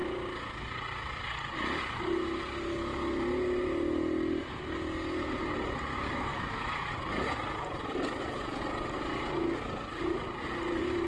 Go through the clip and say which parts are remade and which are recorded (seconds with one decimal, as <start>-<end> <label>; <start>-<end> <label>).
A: 0.0-6.3 recorded; 6.3-6.9 remade; 6.9-11.1 recorded